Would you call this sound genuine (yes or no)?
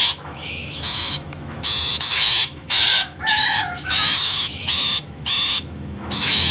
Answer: no